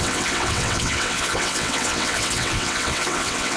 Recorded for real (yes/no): no